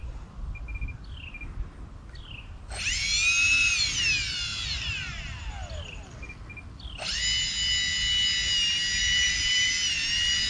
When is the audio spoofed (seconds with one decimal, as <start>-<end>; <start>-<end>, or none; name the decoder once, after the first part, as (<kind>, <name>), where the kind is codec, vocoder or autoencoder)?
0.0-0.5 (vocoder, BigVGAN v2); 9.0-9.7